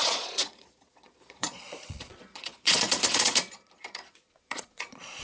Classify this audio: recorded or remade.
remade